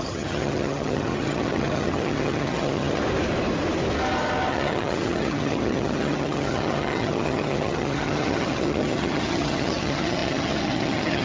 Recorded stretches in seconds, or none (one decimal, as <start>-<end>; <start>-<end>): 3.0-4.5